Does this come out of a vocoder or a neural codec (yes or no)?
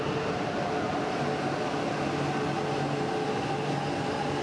no